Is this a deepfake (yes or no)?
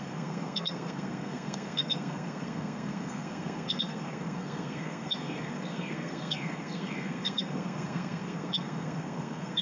yes